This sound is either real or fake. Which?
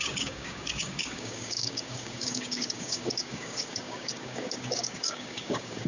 fake